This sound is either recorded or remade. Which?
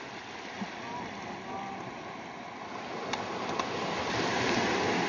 recorded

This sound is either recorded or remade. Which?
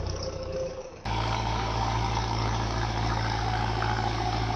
remade